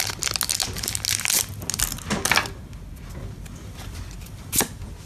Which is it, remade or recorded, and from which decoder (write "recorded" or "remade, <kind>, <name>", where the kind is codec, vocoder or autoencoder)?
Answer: recorded